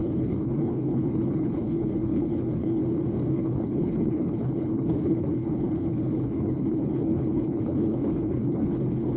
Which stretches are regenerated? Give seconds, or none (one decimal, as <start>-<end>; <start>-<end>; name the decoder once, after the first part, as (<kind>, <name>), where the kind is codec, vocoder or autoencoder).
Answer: 0.0-2.8 (codec, HILCodec); 3.3-9.2